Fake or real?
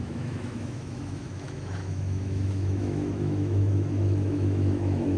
fake